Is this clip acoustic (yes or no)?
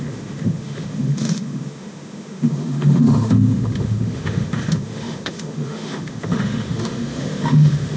no